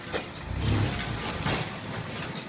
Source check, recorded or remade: recorded